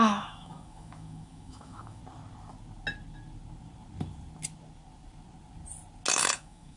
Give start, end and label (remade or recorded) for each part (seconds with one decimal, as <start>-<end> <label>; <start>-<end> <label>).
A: 0.0-2.0 remade; 2.0-6.1 recorded; 6.1-6.8 remade